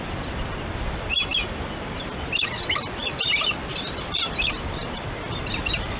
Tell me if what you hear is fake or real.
real